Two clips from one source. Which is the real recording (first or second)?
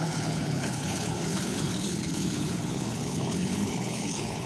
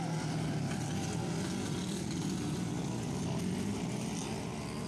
second